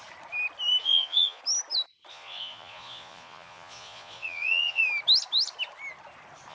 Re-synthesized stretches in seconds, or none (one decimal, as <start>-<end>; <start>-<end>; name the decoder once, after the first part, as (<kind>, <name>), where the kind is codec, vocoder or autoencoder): 0.8-1.4 (vocoder, Vocos); 2.1-4.8